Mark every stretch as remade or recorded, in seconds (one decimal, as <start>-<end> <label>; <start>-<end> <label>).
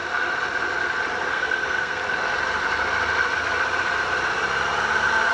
0.0-1.3 recorded; 1.3-2.0 remade; 2.0-5.3 recorded